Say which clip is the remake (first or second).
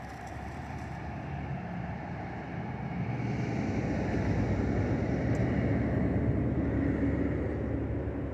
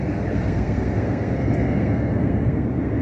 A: second